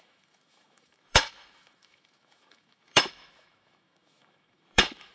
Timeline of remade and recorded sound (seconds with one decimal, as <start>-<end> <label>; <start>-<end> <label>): 0.0-5.1 remade